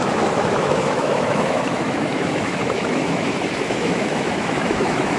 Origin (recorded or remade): remade